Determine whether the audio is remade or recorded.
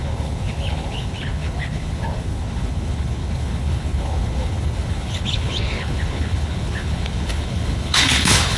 remade